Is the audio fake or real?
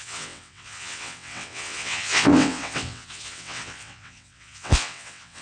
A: fake